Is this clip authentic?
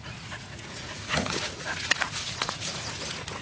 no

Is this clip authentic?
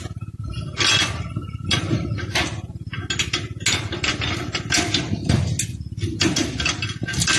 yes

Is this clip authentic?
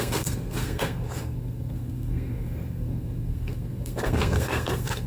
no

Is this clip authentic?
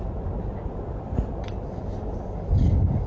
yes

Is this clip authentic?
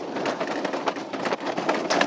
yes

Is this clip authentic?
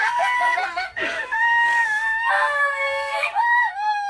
no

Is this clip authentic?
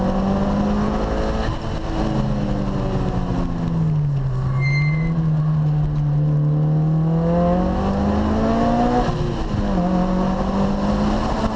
yes